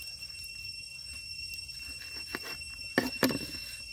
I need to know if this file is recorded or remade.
recorded